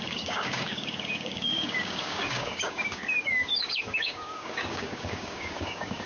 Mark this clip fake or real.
fake